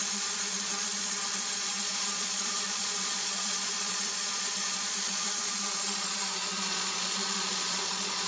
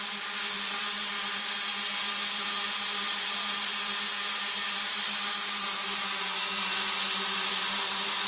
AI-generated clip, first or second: first